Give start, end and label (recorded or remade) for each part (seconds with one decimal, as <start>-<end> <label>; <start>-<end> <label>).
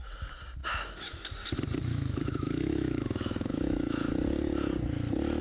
0.0-0.6 recorded; 0.6-1.2 remade; 1.2-1.9 recorded; 1.9-4.1 remade; 4.1-5.4 recorded